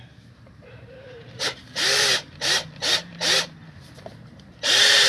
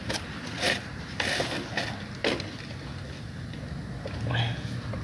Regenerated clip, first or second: first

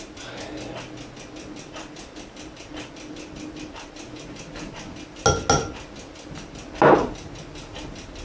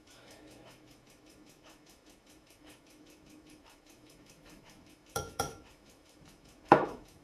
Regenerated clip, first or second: second